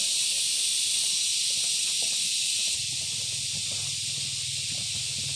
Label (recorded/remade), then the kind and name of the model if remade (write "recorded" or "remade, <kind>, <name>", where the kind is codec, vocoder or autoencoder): recorded